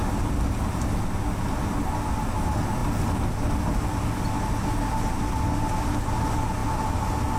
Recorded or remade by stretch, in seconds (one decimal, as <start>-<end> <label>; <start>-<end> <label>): 0.0-7.4 recorded